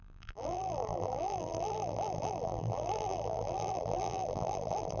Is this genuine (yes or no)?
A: no